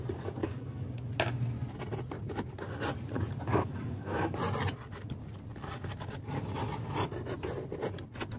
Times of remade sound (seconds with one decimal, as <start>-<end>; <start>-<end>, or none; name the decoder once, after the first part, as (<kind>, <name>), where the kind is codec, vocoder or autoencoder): 0.4-1.1 (codec, DAC); 3.5-4.4